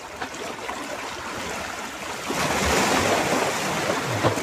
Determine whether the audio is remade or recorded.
recorded